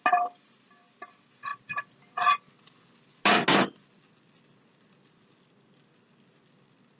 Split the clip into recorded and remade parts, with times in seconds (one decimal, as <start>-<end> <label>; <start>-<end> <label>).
0.0-7.0 recorded